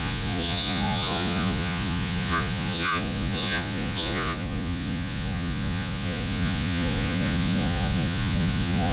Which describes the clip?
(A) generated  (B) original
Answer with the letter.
A